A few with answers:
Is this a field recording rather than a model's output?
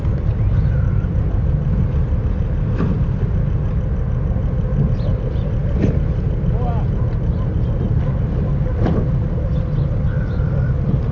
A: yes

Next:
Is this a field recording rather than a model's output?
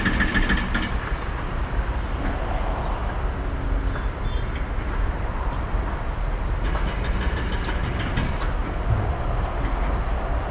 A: yes